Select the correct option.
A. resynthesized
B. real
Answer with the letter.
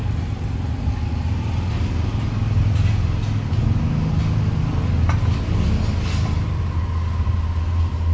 B